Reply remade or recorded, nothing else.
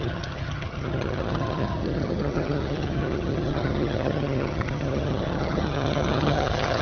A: remade